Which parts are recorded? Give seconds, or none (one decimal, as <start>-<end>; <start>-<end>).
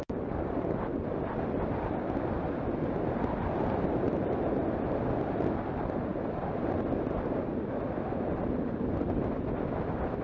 0.0-6.1; 6.8-10.2